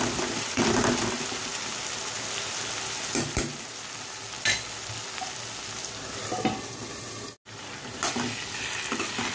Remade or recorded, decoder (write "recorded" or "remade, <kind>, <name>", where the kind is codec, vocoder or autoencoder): recorded